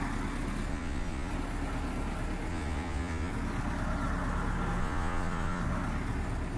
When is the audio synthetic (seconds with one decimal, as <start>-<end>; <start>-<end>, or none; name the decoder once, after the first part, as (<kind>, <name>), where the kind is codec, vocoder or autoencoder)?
0.7-1.3 (vocoder, Vocos); 2.5-3.3; 4.8-5.6